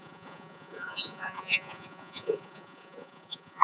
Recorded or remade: remade